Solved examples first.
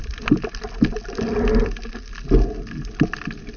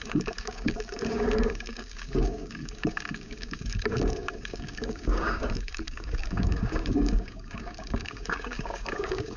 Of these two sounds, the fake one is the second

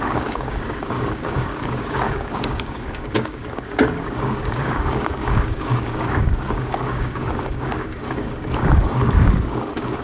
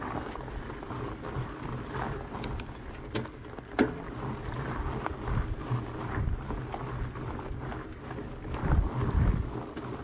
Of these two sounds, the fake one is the first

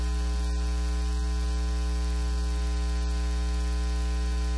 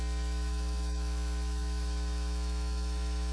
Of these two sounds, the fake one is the second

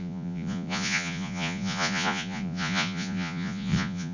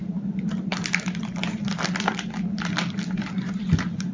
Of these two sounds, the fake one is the first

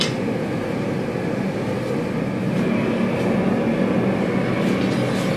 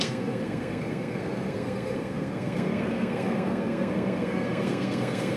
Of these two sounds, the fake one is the second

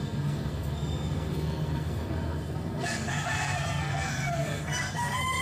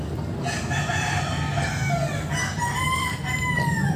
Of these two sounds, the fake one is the first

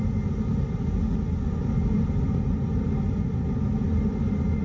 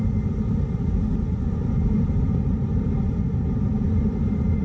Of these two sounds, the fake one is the second